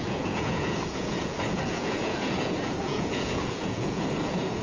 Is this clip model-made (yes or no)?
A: yes